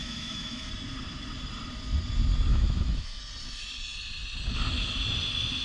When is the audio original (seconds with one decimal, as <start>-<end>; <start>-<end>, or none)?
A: 0.7-2.5; 3.2-5.6